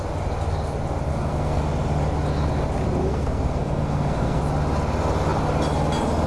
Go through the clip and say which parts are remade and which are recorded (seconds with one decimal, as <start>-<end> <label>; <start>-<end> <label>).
0.0-1.1 recorded; 1.1-1.6 remade; 1.6-3.0 recorded; 3.0-4.4 remade; 4.4-6.3 recorded